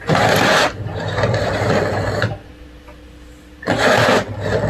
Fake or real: real